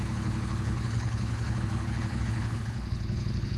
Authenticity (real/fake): fake